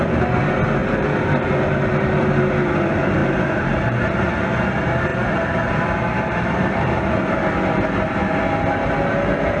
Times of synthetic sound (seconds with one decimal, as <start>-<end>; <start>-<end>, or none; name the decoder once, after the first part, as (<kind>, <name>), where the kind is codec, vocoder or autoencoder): 0.8-2.1 (vocoder, BigVGAN v2); 3.2-4.3; 5.1-7.1